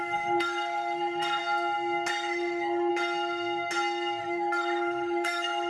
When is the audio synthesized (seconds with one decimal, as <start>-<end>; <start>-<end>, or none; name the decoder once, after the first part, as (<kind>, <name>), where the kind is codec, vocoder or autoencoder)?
0.0-1.4 (codec, SNAC); 2.1-2.9; 4.2-5.7